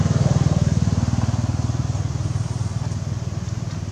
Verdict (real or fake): real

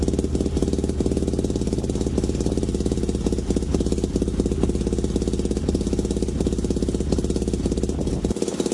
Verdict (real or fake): real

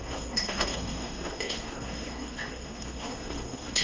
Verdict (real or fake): fake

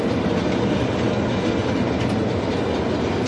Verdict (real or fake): real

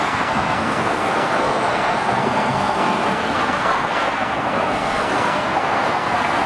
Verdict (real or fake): fake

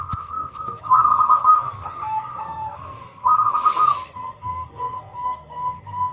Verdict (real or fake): fake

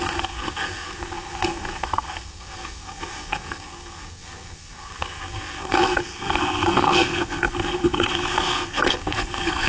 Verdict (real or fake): fake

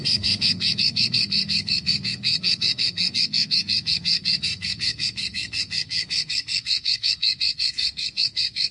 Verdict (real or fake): fake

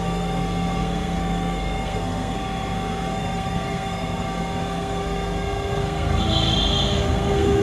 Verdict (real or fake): fake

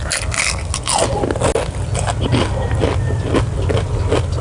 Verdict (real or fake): real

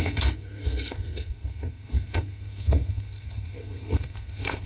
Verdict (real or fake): fake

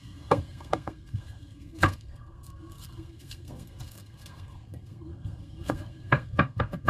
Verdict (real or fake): fake